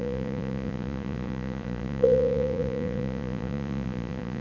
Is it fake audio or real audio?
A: fake